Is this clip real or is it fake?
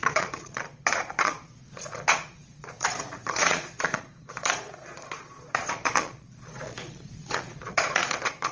fake